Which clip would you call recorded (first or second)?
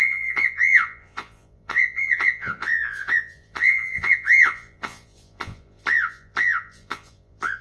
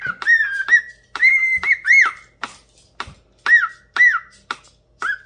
second